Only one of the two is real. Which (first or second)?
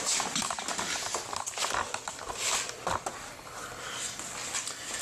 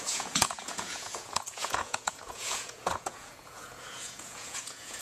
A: first